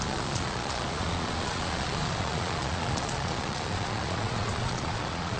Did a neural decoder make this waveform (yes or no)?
yes